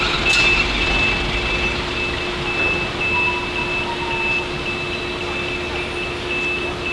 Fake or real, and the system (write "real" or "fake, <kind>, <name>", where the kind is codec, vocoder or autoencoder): real